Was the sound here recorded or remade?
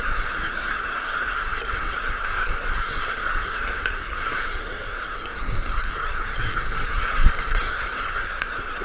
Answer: remade